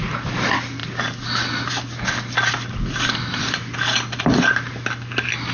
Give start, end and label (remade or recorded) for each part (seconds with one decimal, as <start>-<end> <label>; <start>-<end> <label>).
0.0-5.5 recorded